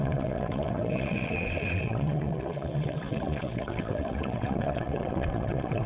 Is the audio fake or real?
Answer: fake